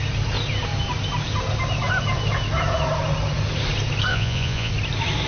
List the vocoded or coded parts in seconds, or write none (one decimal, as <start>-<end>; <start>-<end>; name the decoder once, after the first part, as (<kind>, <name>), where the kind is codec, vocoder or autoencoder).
4.1-4.7 (vocoder, Vocos)